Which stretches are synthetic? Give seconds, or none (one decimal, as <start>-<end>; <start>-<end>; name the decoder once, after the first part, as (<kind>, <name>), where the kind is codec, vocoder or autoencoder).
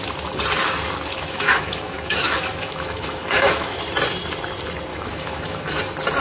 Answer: 1.1-3.8 (autoencoder, DAC-VAE); 4.9-5.8